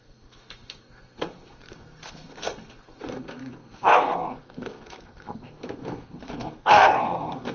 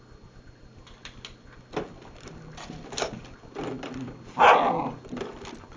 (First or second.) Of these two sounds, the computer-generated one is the first